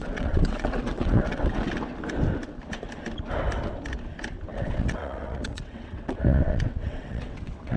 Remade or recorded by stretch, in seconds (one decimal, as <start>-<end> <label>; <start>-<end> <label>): 0.0-1.7 remade; 1.7-4.5 recorded; 4.5-7.8 remade